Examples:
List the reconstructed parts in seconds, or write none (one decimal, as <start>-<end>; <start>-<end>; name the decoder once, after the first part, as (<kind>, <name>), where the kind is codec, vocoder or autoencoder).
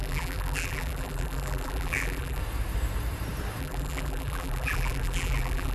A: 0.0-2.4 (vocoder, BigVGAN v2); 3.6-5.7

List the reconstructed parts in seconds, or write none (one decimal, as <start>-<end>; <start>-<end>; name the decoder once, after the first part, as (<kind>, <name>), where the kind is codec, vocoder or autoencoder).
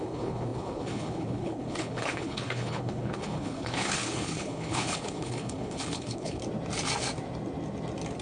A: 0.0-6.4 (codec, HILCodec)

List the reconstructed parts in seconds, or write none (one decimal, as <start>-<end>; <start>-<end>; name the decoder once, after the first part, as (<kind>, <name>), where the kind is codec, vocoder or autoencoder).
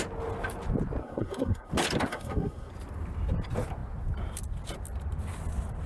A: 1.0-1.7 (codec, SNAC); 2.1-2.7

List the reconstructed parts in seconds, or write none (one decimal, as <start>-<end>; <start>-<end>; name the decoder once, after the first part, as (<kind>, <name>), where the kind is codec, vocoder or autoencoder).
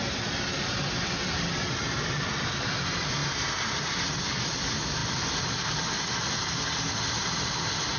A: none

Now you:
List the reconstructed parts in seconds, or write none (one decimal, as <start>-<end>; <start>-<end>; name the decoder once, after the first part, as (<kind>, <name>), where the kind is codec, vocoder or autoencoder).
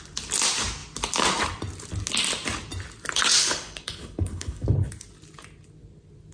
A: 3.4-4.9 (codec, HILCodec)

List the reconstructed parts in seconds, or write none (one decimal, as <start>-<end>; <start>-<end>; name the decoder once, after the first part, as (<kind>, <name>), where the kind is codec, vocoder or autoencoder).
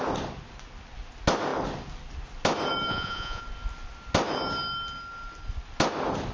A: 2.9-3.4 (vocoder, Vocos)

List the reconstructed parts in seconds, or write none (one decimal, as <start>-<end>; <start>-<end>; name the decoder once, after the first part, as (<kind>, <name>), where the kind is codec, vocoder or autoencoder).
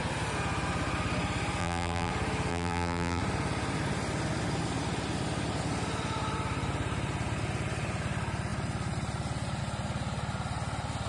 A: 1.6-2.1 (vocoder, BigVGAN v2); 2.5-3.2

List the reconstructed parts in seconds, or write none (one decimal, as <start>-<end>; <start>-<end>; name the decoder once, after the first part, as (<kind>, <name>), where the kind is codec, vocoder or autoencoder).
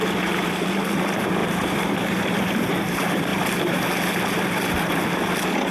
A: none